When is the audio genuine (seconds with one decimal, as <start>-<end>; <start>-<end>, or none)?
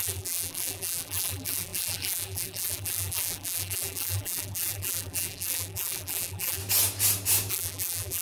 6.6-7.5